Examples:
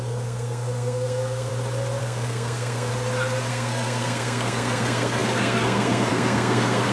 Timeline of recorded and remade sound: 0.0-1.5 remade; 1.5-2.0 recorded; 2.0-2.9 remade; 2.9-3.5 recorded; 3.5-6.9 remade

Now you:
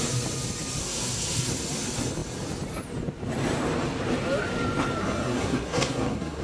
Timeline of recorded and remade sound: 0.0-0.8 recorded; 0.8-1.5 remade; 1.5-5.0 recorded; 5.0-6.4 remade

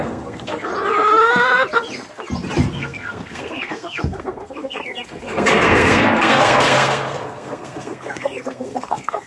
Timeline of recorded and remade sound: 0.0-0.7 remade; 0.7-2.7 recorded; 2.7-9.3 remade

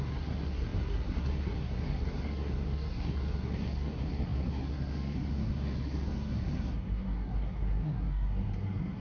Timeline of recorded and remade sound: 0.0-9.0 remade

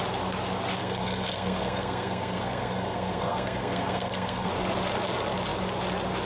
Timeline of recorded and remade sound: 0.0-0.8 recorded; 0.8-4.5 remade; 4.5-6.3 recorded

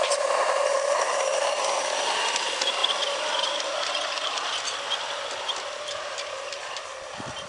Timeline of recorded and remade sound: 0.0-7.5 recorded